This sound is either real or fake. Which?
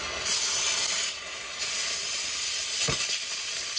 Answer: real